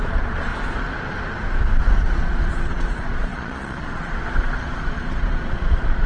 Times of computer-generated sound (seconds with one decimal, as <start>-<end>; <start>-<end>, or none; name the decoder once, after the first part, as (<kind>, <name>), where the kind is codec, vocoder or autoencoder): 0.0-0.5 (vocoder, Vocos); 1.8-6.1